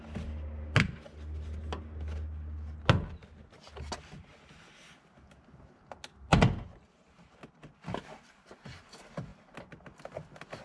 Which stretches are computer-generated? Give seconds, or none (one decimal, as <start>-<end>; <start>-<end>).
none